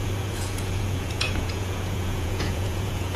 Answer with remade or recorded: remade